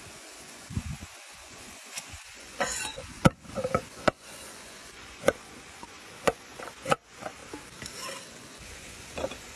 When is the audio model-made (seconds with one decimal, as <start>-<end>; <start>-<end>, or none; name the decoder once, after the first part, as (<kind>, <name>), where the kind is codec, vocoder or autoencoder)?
0.0-7.4 (vocoder, Vocos); 8.3-9.6